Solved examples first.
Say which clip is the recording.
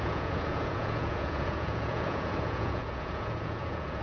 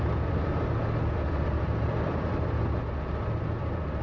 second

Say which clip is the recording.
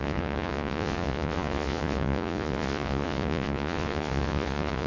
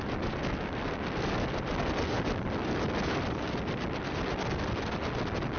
second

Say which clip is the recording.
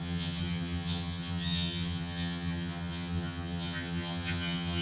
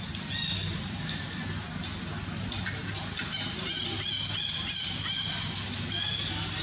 second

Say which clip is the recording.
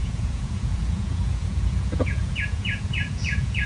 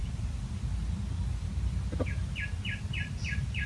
second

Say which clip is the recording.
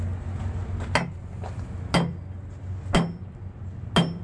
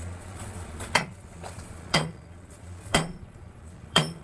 first